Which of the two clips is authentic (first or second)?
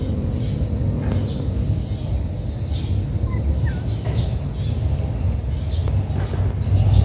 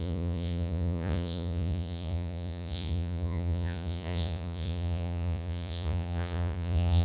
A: first